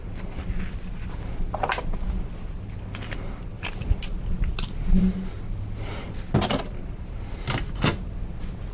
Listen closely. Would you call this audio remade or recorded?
recorded